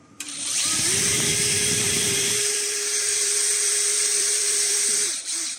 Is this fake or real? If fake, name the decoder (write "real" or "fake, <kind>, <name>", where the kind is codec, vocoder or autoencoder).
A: fake, vocoder, BigVGAN v2